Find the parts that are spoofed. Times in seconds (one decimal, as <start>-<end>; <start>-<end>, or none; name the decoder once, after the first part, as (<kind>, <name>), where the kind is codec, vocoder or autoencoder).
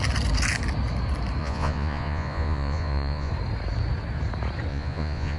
1.4-3.3 (vocoder, Vocos); 4.7-5.4